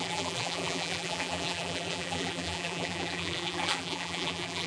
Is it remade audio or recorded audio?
remade